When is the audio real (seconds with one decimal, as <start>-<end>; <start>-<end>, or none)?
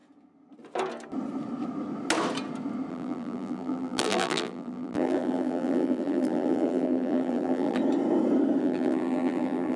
0.0-2.9; 7.8-8.6